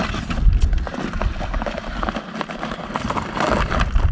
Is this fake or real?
real